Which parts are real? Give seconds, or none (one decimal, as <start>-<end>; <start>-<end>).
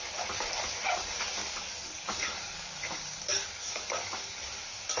0.0-1.4; 4.4-5.0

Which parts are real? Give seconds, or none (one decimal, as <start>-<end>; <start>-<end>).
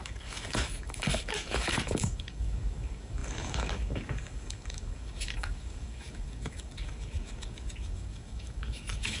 none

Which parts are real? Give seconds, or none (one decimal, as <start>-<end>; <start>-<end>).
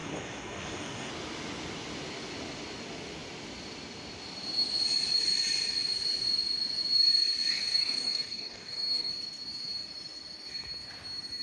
1.1-7.5; 9.1-11.4